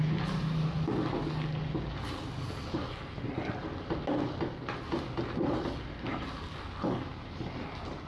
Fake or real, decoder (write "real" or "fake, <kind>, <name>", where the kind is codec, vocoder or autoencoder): real